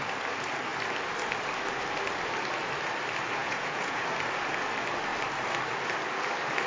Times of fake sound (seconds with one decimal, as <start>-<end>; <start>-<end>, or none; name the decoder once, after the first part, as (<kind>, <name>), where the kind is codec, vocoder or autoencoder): 3.4-4.0 (vocoder, Vocos)